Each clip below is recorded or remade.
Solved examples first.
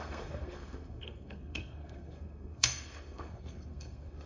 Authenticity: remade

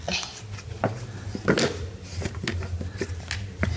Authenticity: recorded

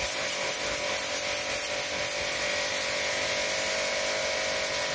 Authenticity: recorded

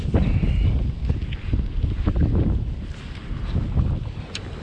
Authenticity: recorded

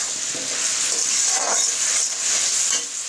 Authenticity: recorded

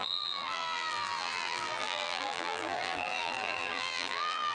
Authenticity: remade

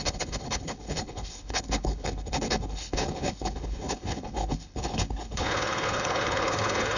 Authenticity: remade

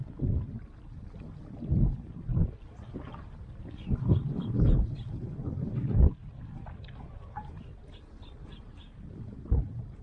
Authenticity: recorded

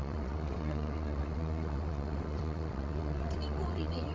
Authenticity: remade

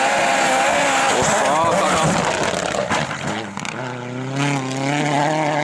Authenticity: recorded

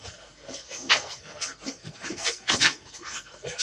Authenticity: remade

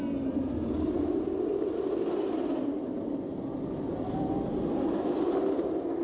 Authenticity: recorded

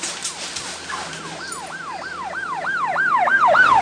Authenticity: recorded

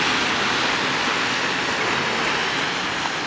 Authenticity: recorded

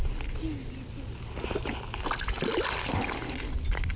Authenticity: recorded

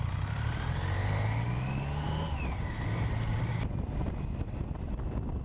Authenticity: recorded